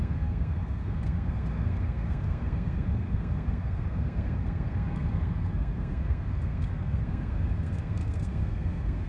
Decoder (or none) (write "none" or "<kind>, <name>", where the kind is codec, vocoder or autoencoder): codec, SNAC